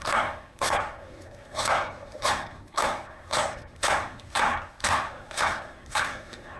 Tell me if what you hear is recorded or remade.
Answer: remade